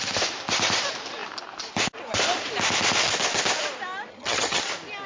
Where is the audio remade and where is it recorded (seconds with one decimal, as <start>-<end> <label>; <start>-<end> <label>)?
0.0-4.1 recorded; 4.1-4.6 remade; 4.6-5.1 recorded